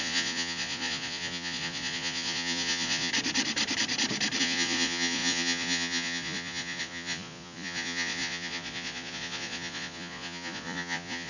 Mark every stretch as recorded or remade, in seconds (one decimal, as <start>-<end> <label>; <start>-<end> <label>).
0.0-3.1 remade; 3.1-4.4 recorded; 4.4-11.3 remade